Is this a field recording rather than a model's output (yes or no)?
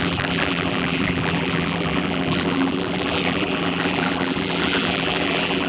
no